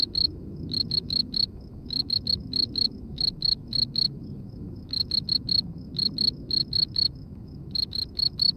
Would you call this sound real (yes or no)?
no